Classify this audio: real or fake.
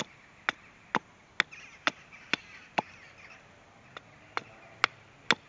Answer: real